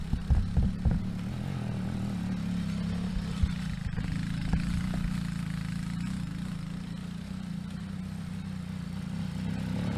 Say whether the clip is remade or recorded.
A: recorded